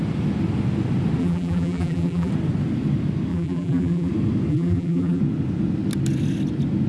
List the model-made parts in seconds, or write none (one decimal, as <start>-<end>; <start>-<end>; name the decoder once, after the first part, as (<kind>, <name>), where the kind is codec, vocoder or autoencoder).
1.2-2.3 (vocoder, BigVGAN v2); 3.3-4.1; 4.5-5.2